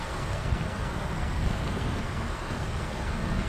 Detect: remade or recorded remade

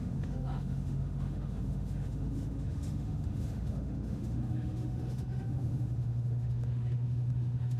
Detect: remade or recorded remade